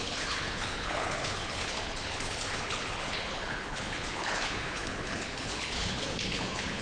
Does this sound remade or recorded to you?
remade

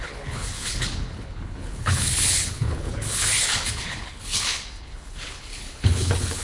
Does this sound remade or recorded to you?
remade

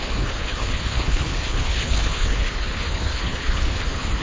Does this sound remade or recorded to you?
remade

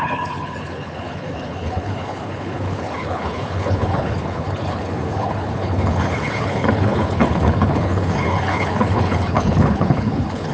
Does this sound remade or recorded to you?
remade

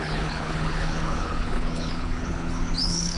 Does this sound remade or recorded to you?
remade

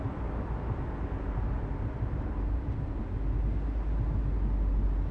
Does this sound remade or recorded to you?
recorded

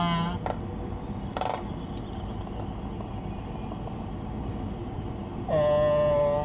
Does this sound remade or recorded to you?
recorded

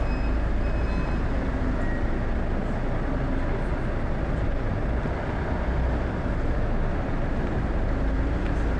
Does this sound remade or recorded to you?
recorded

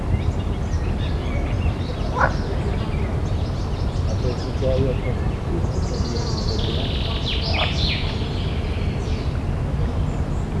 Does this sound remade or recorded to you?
recorded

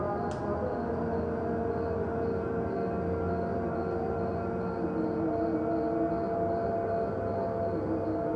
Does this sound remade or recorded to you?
recorded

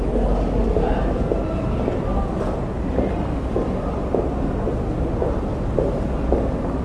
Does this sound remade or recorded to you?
recorded